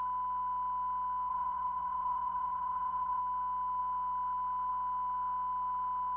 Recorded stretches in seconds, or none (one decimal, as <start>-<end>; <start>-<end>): 0.0-1.3; 3.2-6.2